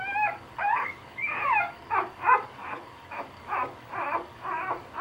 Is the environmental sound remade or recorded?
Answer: remade